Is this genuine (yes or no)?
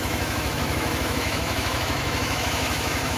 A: no